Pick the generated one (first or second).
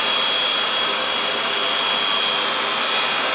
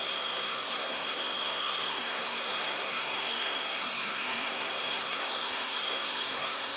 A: second